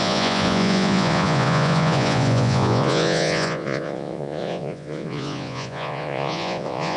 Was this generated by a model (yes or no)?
yes